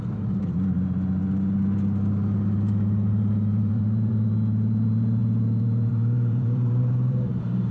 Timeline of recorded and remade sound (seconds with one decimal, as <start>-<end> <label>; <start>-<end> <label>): 0.0-1.2 remade; 1.2-3.1 recorded; 3.1-7.7 remade